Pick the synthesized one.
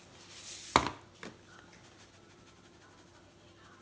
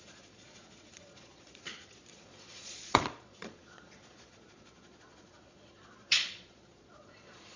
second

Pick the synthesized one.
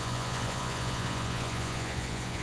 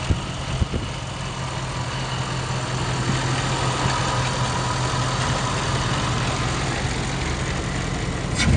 first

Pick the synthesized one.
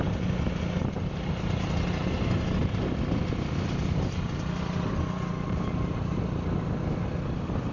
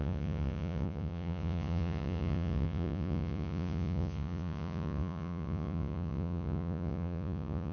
second